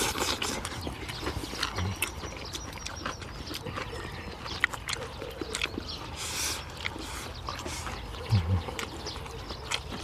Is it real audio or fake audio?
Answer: real